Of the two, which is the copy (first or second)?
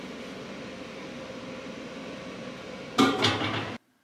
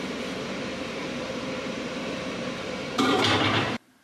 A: second